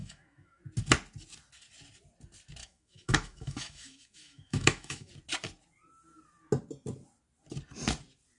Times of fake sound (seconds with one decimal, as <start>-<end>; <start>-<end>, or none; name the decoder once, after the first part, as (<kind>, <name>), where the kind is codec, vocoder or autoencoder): 0.0-0.6 (autoencoder, DAC-VAE); 2.6-5.1

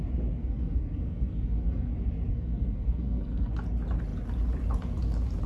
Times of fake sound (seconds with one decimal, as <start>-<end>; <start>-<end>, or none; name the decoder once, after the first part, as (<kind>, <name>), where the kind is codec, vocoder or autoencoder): 0.4-1.9 (codec, SNAC); 2.3-3.5

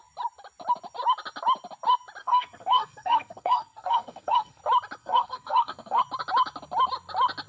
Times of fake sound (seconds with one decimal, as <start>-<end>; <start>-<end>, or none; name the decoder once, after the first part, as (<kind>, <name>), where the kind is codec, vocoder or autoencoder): 2.2-4.6 (codec, SNAC); 5.0-6.0

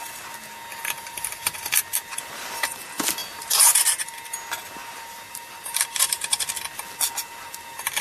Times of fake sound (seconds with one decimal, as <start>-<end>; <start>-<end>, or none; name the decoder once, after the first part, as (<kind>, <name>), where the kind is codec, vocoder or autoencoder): 0.7-1.8 (vocoder, BigVGAN v2); 3.2-3.8; 4.8-6.5

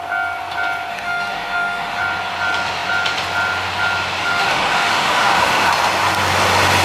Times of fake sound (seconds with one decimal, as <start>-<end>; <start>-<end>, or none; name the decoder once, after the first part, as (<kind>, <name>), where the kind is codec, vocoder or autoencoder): 0.9-2.0 (autoencoder, DAC-VAE); 4.2-5.7

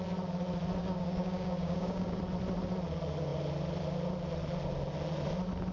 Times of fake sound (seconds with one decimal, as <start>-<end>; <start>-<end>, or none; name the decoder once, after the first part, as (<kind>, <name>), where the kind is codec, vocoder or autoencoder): 0.8-2.2 (codec, DAC)

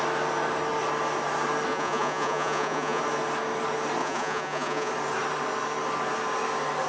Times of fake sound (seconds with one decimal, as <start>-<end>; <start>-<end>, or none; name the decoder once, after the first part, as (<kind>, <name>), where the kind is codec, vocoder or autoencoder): 1.7-3.0 (vocoder, Vocos); 4.0-4.9